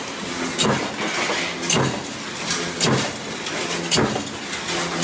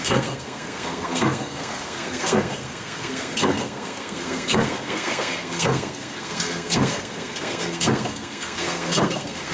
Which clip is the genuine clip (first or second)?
first